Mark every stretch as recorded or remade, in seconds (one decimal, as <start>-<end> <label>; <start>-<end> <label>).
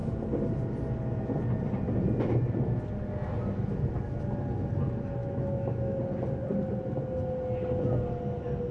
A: 0.0-5.2 recorded; 5.2-6.0 remade; 6.0-8.7 recorded